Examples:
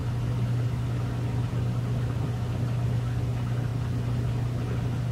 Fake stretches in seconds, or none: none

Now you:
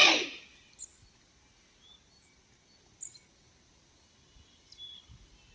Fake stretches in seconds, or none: none